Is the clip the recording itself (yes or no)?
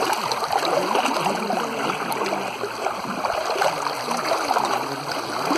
yes